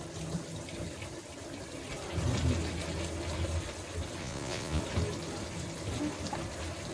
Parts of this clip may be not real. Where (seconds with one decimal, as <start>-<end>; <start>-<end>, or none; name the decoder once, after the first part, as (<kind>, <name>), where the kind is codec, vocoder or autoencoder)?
4.2-4.8 (vocoder, Vocos)